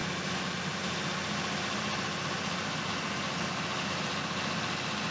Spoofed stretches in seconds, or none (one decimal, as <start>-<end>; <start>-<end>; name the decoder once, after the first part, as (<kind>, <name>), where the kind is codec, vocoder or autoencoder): none